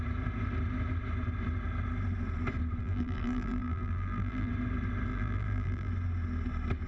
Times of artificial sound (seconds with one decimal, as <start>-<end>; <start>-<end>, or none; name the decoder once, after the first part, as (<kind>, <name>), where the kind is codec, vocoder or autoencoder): 2.8-4.5 (vocoder, BigVGAN v2); 5.1-5.9